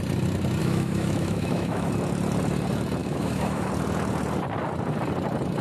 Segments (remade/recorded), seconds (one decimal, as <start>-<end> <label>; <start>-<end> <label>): 0.0-0.6 recorded; 0.6-1.9 remade; 1.9-3.0 recorded; 3.0-3.7 remade; 3.7-5.6 recorded